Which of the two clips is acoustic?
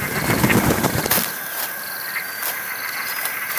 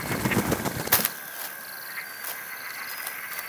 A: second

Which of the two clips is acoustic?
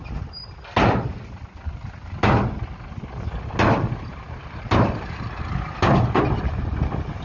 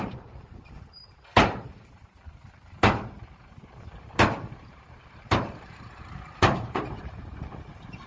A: first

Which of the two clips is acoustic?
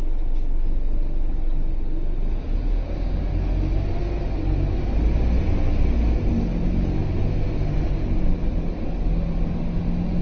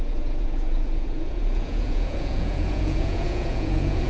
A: first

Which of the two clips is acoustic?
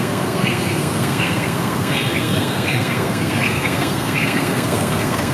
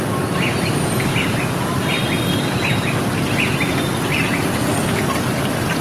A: second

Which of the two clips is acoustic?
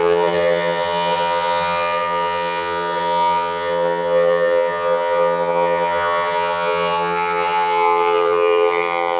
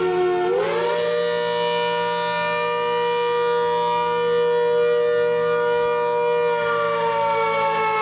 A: second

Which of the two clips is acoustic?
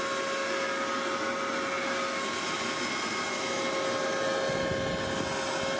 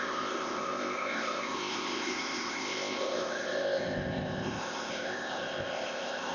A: first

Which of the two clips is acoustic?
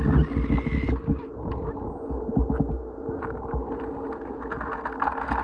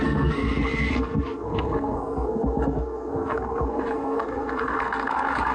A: first